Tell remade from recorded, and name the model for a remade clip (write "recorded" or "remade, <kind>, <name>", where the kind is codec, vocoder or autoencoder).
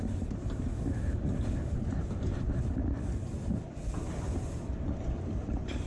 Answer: recorded